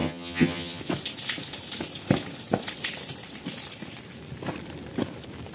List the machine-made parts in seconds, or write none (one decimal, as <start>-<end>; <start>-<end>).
0.0-0.8